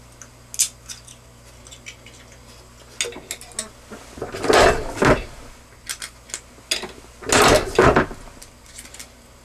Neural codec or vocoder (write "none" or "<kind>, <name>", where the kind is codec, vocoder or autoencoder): none